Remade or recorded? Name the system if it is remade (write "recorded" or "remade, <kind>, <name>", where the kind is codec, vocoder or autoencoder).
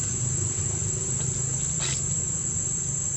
recorded